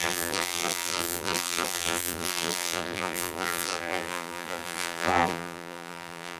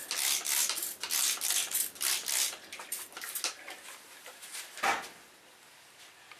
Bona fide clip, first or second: second